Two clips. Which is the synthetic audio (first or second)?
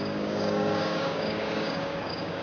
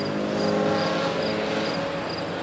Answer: first